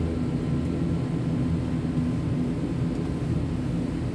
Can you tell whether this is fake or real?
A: real